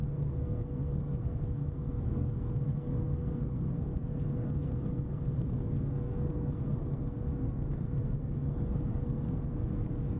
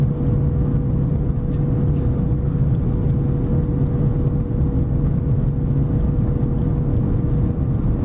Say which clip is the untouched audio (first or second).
second